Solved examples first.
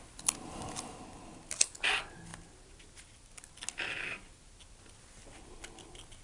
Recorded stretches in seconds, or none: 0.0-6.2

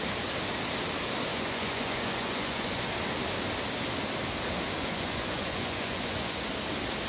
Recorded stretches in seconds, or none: 0.0-1.3; 2.8-4.8; 6.5-7.1

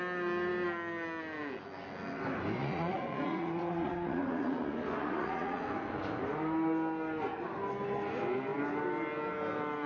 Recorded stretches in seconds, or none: 0.0-2.6; 5.6-9.9